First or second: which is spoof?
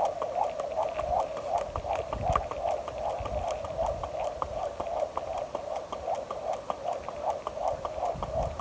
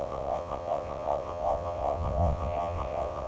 second